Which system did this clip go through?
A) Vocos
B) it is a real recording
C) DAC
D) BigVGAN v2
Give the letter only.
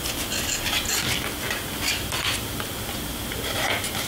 B